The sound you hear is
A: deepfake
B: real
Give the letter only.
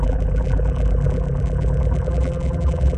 A